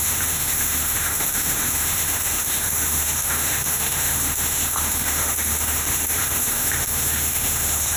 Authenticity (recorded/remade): remade